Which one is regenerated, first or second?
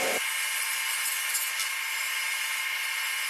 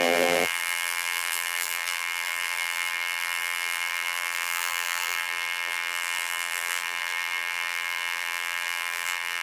second